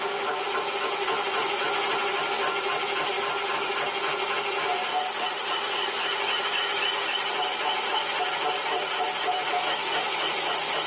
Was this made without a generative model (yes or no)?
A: yes